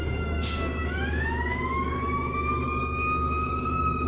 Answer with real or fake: fake